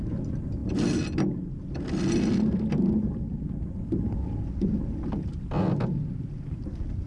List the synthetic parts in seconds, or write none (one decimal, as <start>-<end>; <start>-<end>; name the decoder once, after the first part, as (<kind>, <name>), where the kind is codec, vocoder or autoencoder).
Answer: none